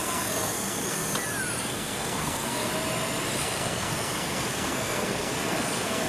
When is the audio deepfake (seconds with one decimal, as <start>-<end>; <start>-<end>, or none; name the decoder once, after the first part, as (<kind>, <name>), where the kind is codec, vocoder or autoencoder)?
0.0-1.0 (codec, SNAC); 1.6-2.7; 3.4-6.1

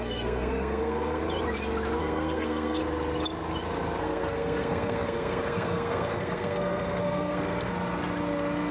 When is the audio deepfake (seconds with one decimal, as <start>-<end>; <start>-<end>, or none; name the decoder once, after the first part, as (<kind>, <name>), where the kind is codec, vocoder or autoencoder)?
0.0-1.2 (codec, SNAC); 2.0-2.8; 4.0-7.7

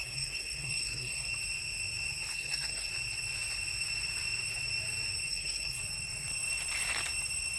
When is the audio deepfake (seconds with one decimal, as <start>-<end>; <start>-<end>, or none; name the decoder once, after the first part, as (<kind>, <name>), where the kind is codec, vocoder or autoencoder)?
0.0-1.3 (codec, SNAC); 2.3-2.9; 5.3-5.8

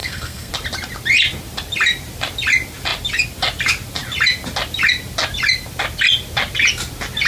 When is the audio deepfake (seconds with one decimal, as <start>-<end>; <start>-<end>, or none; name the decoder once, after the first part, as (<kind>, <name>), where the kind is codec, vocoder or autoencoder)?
0.0-0.5 (codec, SNAC)